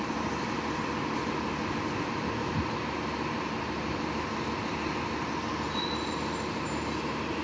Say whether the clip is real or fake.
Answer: real